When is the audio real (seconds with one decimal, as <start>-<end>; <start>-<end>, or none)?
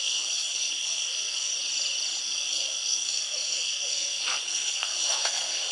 1.5-2.2